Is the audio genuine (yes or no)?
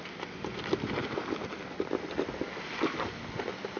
yes